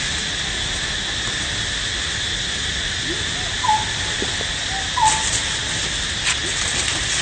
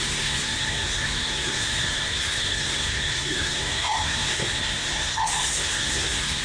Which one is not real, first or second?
second